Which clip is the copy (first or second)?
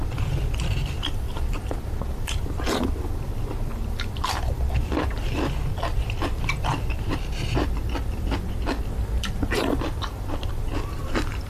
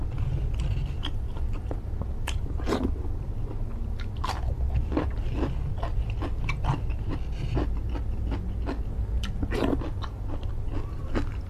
first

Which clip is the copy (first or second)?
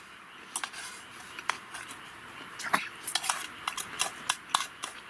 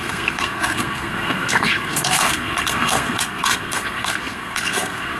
second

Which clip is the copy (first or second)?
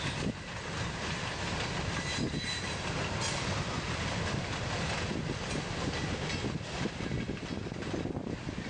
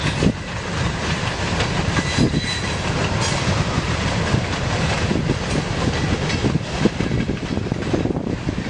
second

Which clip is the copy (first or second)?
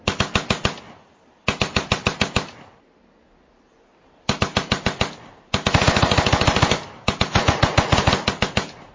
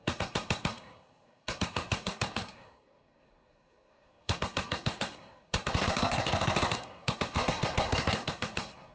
second